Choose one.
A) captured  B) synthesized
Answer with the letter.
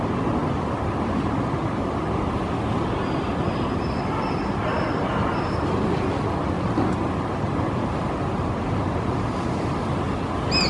A